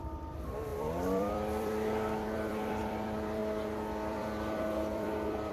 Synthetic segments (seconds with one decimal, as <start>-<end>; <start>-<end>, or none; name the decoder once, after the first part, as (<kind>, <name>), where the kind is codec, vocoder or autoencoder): 0.0-3.4 (vocoder, BigVGAN v2); 4.1-5.5